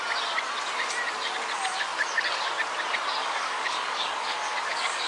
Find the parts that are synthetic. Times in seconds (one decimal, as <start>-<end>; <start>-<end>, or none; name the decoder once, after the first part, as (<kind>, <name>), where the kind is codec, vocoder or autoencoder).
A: 3.2-5.1 (codec, DAC)